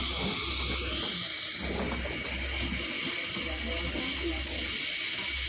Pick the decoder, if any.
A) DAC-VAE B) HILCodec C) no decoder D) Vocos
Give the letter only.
C